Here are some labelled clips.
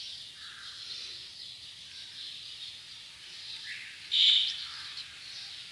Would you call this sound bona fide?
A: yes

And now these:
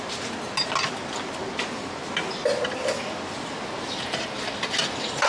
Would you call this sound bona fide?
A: yes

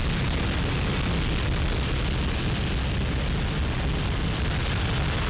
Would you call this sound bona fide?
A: yes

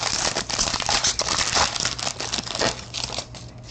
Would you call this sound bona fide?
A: yes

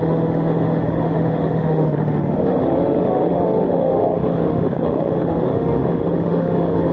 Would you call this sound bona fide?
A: no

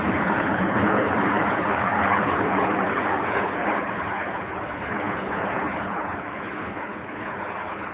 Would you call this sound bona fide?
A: no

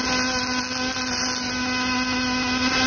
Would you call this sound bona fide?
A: yes